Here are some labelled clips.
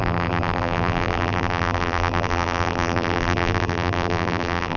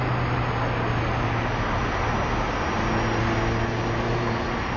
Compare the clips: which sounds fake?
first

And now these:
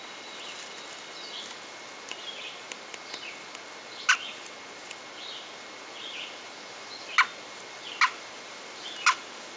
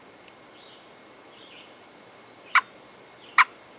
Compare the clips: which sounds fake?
second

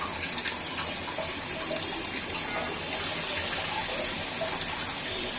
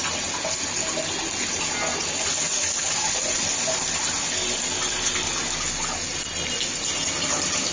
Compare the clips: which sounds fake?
first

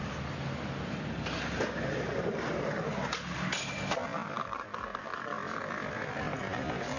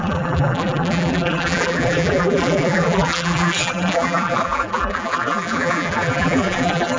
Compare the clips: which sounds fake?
second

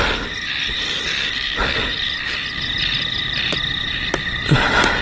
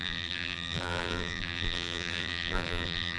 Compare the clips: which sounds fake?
second